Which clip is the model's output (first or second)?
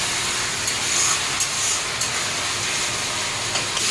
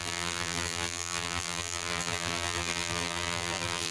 second